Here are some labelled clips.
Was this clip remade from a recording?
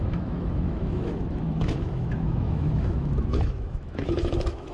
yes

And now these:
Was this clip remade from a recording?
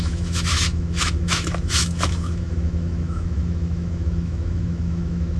yes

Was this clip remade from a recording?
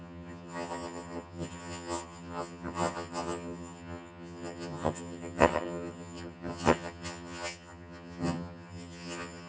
yes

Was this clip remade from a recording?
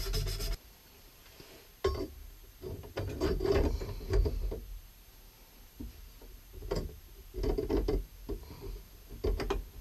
no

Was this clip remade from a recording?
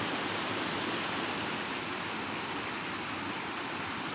no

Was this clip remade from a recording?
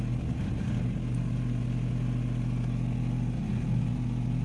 no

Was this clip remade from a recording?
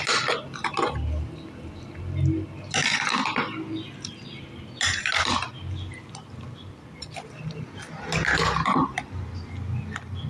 no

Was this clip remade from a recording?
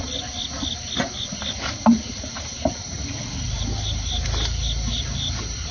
no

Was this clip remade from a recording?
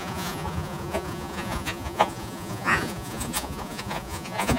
yes